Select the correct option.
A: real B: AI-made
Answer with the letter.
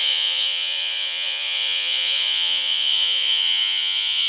B